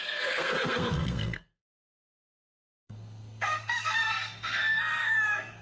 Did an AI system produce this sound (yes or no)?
yes